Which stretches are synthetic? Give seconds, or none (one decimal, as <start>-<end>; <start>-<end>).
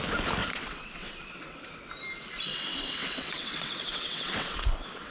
0.4-1.9; 2.5-5.1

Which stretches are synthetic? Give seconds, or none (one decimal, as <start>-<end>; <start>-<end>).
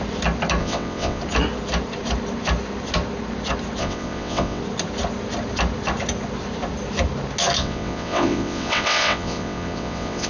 0.6-1.2; 3.8-4.6; 7.6-10.3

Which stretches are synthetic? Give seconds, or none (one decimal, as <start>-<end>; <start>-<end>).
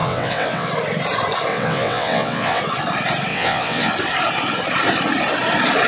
0.0-0.7; 1.5-2.6; 3.3-3.9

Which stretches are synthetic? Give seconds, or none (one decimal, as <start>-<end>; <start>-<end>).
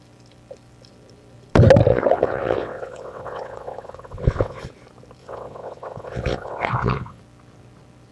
1.9-4.6; 5.2-7.2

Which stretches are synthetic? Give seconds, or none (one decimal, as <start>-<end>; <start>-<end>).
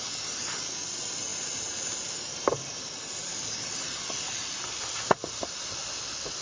none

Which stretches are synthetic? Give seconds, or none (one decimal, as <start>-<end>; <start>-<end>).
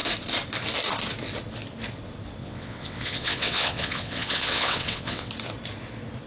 2.4-5.3